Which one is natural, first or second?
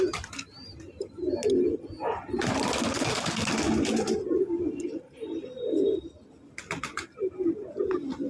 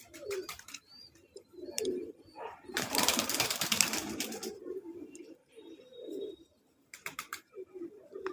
first